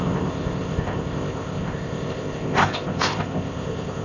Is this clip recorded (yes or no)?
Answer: no